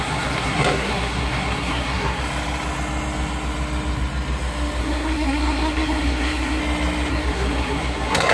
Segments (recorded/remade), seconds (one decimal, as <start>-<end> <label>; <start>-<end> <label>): 0.0-2.2 remade; 2.2-4.8 recorded; 4.8-6.6 remade; 6.6-7.1 recorded; 7.1-8.3 remade